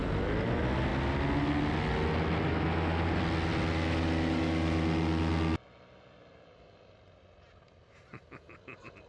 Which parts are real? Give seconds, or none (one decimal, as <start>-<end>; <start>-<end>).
0.0-9.1